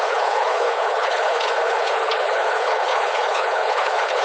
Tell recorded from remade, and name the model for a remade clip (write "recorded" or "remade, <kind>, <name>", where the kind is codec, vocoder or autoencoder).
remade, codec, HILCodec